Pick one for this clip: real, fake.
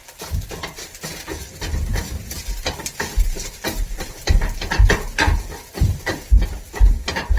real